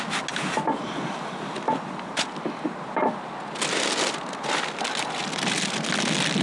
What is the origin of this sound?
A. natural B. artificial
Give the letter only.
A